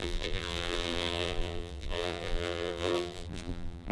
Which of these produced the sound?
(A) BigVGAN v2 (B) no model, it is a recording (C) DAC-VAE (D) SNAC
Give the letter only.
A